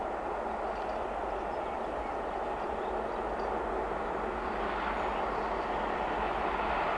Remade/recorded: recorded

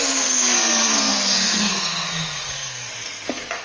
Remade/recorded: remade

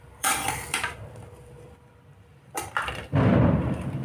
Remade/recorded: remade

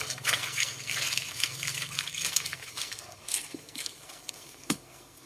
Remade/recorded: remade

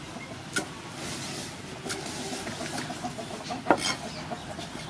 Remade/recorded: recorded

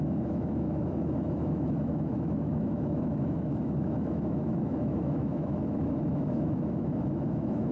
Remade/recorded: remade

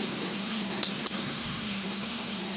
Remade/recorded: remade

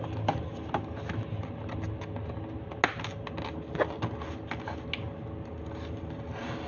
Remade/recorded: recorded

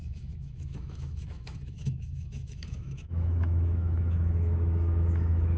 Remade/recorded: remade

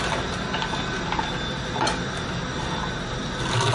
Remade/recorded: recorded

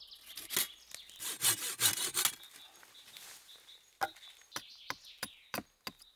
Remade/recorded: recorded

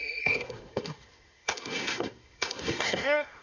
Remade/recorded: remade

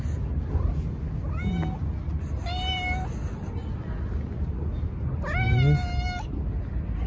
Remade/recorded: recorded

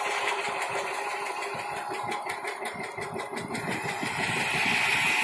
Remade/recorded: recorded